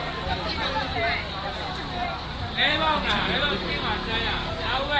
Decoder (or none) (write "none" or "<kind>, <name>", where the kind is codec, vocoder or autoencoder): none